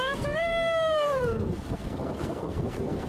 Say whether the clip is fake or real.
fake